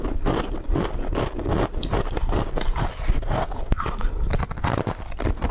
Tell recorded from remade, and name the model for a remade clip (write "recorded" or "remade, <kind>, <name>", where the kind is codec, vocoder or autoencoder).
recorded